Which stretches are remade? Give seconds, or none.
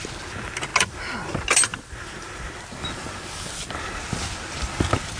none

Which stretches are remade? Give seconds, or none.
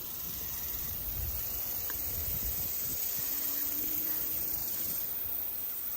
0.0-2.9 (vocoder, BigVGAN v2); 3.6-4.6; 5.6-6.0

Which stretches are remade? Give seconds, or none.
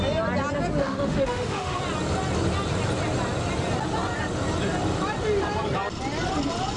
0.8-1.8 (autoencoder, DAC-VAE)